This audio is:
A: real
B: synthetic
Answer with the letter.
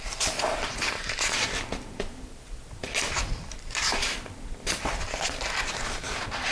B